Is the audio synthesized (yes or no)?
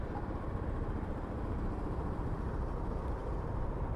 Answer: no